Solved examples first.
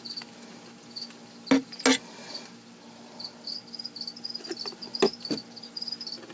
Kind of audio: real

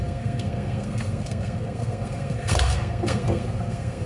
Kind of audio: fake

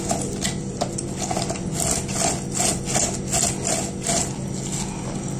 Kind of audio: real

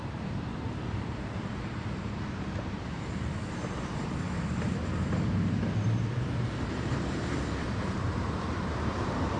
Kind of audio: fake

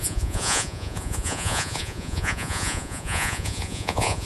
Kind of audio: fake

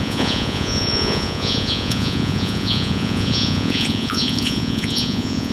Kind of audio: fake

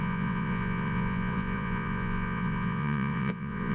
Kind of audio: fake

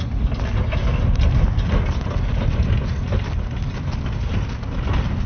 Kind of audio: real